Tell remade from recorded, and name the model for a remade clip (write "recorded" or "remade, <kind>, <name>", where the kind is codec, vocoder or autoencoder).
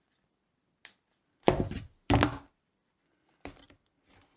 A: remade, vocoder, BigVGAN v2